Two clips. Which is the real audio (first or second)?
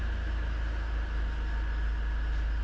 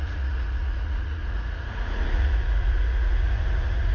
first